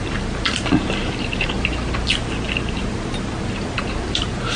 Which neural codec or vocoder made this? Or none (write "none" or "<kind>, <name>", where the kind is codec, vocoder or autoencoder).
none